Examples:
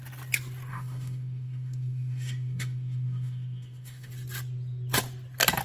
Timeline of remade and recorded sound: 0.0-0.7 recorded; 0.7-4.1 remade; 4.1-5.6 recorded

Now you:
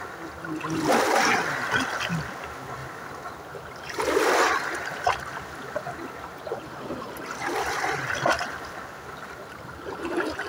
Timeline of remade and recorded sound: 0.0-10.5 recorded

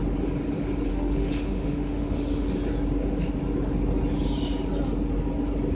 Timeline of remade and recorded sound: 0.0-0.9 recorded; 0.9-2.5 remade; 2.5-5.7 recorded

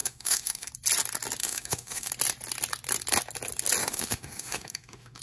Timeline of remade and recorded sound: 0.0-0.7 remade; 0.7-1.4 recorded; 1.4-2.1 remade; 2.1-3.8 recorded; 3.8-5.2 remade

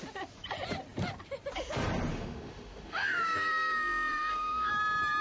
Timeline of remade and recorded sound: 0.0-2.1 recorded; 2.1-4.7 remade; 4.7-5.2 recorded